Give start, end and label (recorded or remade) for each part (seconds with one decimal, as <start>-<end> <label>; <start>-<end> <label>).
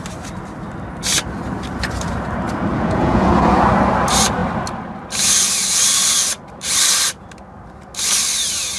0.0-2.7 recorded; 2.7-3.6 remade; 3.6-8.8 recorded